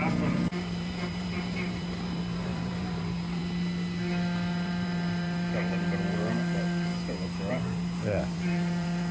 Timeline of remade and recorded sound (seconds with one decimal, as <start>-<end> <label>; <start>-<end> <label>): 0.0-3.4 remade; 3.4-4.5 recorded; 4.5-6.9 remade; 6.9-7.5 recorded; 7.5-9.1 remade